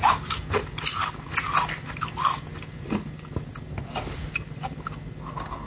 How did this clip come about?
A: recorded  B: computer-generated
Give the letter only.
A